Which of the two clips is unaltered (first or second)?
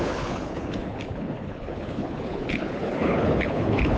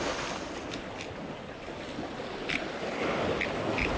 second